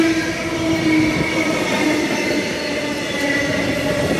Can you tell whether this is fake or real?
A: real